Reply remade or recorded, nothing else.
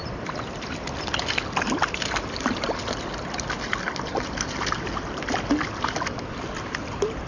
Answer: recorded